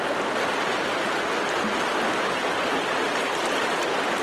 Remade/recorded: recorded